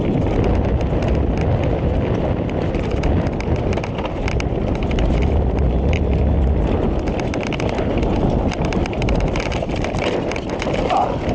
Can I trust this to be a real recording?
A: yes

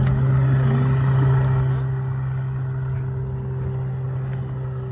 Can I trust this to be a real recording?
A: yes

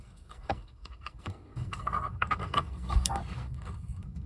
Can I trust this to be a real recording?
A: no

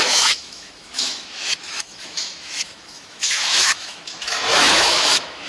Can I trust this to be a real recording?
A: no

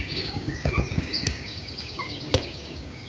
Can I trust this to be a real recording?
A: no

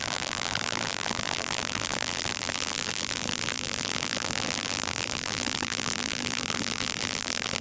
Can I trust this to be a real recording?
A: no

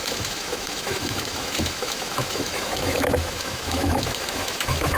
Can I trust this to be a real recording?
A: no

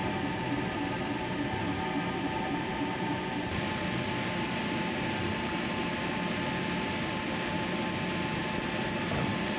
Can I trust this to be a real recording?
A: yes